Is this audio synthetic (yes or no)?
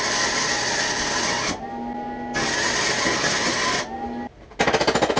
no